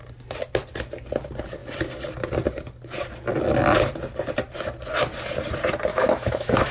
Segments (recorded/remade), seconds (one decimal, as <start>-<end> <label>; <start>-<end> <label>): 0.0-5.9 recorded; 5.9-6.7 remade